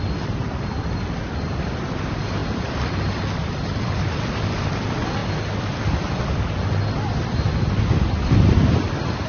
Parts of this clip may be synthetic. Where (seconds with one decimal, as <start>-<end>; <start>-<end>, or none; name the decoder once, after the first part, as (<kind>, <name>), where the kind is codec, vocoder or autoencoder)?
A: 0.0-5.2 (vocoder, BigVGAN v2)